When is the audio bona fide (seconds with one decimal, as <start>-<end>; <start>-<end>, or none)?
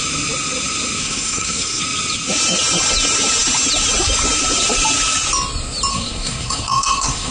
0.0-1.0; 1.8-5.9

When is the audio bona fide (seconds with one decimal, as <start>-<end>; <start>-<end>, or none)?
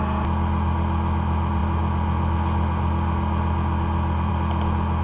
0.0-5.0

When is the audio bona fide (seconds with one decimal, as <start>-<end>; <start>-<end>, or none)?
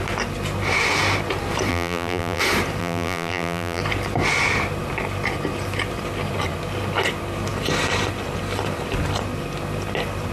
0.0-1.7; 2.4-2.8; 3.8-10.3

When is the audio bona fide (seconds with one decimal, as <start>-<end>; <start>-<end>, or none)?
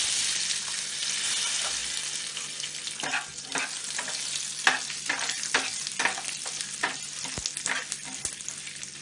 0.0-9.0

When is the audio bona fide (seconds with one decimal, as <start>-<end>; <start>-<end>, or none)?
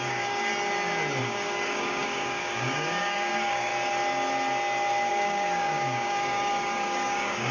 0.5-1.2; 3.7-5.1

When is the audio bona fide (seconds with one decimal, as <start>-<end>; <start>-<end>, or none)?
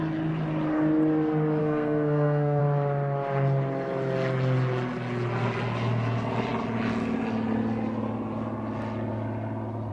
0.0-1.6; 2.6-9.9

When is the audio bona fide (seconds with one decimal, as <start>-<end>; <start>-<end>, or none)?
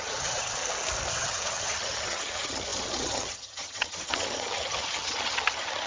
0.6-1.1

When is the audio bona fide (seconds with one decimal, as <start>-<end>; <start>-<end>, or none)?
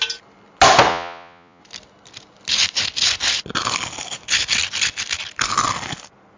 0.0-0.9; 1.6-6.4